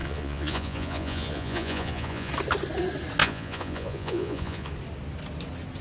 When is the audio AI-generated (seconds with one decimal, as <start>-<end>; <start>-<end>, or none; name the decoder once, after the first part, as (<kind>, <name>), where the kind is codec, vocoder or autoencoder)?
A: 0.0-2.3 (vocoder, Vocos); 3.2-4.7